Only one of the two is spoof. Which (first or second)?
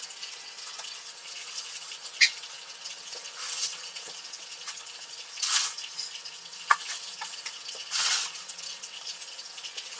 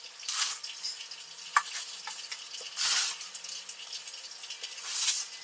first